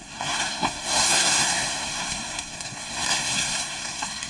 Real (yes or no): no